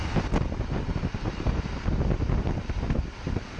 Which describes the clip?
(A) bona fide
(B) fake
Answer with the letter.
A